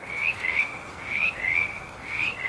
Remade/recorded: remade